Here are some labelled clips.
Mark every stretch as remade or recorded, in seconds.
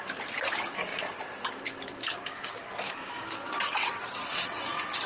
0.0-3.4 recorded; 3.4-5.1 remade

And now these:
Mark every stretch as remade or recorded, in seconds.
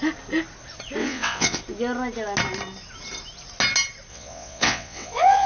0.0-1.0 recorded; 1.0-1.6 remade; 1.6-4.1 recorded; 4.1-5.5 remade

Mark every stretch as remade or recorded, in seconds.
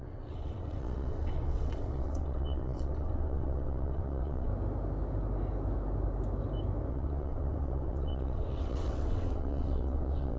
0.0-4.5 remade; 4.5-6.9 recorded; 6.9-10.4 remade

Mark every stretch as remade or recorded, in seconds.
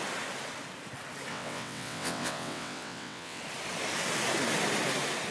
0.0-1.3 recorded; 1.3-3.4 remade; 3.4-5.3 recorded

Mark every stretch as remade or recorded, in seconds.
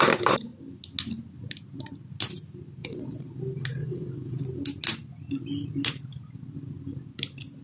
0.0-2.8 recorded; 2.8-3.3 remade; 3.3-3.8 recorded; 3.8-4.4 remade; 4.4-7.6 recorded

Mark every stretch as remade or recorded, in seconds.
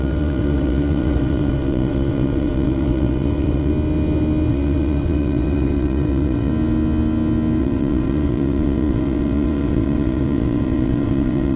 0.0-3.7 remade; 3.7-4.5 recorded; 4.5-6.5 remade; 6.5-7.6 recorded; 7.6-11.6 remade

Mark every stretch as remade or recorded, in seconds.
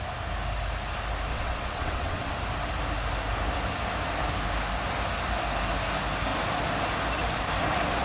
0.0-1.3 recorded; 1.3-2.3 remade; 2.3-8.0 recorded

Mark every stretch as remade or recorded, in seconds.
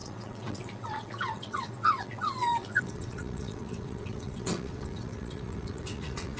0.0-6.4 remade